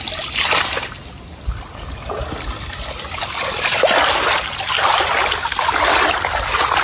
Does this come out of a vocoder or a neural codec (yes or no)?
no